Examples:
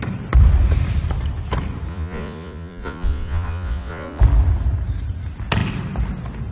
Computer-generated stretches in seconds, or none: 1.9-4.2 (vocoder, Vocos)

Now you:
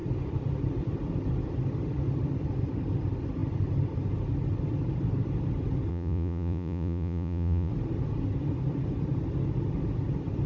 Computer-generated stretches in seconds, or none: 5.9-7.7 (vocoder, Vocos)

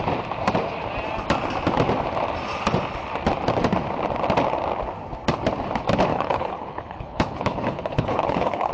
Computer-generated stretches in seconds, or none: 6.1-8.7 (codec, HILCodec)

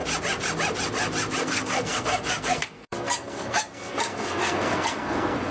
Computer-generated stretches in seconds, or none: 1.4-5.5 (codec, SNAC)

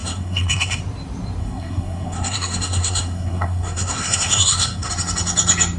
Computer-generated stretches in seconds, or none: 0.0-0.8 (codec, SNAC); 1.4-4.9

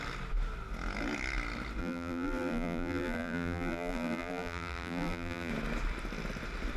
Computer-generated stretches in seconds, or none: 1.8-5.5 (vocoder, BigVGAN v2)